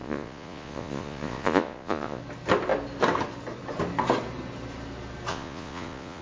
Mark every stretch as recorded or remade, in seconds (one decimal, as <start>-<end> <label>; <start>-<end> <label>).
0.0-2.2 remade; 2.2-5.3 recorded; 5.3-6.2 remade